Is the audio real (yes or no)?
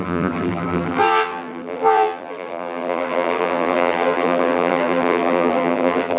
no